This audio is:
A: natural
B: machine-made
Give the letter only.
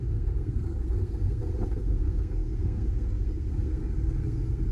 B